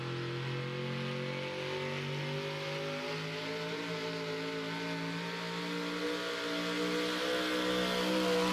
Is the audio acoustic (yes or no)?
yes